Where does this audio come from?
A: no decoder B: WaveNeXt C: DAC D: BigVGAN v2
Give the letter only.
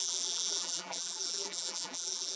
D